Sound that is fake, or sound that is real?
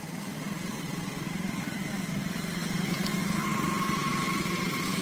real